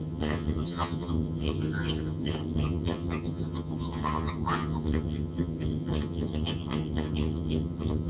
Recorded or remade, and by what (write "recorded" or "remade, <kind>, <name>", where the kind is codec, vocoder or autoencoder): remade, vocoder, HiFi-GAN